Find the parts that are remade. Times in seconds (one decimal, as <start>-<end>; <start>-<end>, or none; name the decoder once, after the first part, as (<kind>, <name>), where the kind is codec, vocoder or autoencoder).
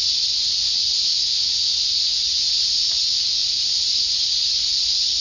3.4-4.0 (vocoder, BigVGAN v2)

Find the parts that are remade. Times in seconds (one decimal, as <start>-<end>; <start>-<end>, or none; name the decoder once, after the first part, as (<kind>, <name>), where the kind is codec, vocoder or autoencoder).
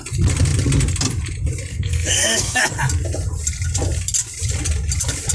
1.7-2.6 (codec, SNAC)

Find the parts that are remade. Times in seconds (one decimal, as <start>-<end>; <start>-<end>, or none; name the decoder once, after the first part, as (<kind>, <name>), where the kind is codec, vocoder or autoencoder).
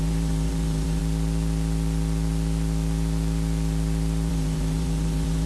0.0-1.0 (vocoder, BigVGAN v2); 4.3-5.5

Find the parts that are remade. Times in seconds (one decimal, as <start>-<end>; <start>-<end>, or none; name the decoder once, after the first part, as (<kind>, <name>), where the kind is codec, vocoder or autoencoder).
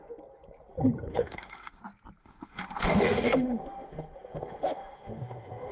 1.1-1.8 (autoencoder, DAC-VAE); 2.2-5.7